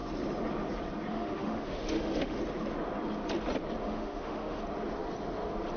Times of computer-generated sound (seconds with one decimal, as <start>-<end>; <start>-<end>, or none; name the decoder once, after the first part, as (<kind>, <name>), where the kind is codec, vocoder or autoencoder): 1.1-2.4 (autoencoder, DAC-VAE); 3.8-4.6